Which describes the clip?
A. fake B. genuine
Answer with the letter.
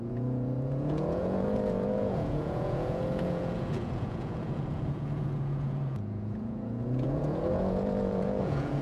A